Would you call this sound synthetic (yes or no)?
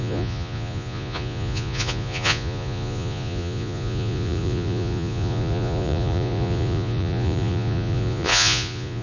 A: yes